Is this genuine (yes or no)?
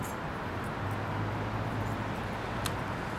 yes